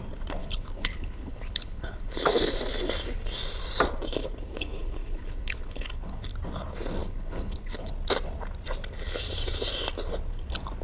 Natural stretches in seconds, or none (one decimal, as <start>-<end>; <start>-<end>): 0.0-0.4; 2.6-4.2; 6.3-7.0; 7.9-10.8